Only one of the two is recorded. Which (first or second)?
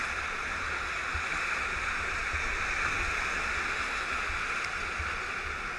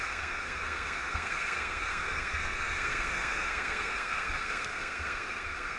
first